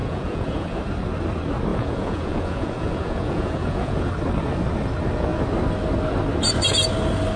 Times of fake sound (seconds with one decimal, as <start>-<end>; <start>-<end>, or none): 0.0-0.8; 1.7-4.1